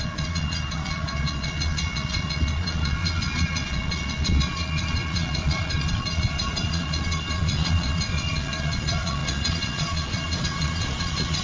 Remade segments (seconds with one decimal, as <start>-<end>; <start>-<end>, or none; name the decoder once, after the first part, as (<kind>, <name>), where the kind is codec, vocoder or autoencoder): 0.0-11.4 (vocoder, Vocos)